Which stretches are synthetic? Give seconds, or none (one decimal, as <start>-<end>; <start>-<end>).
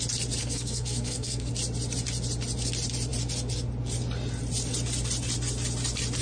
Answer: 0.4-1.5